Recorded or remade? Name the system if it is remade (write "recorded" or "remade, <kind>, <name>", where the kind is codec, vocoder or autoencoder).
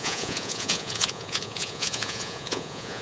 remade, vocoder, Vocos